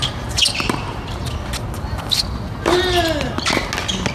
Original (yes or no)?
yes